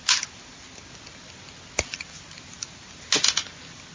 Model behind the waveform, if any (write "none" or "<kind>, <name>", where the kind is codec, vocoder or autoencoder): none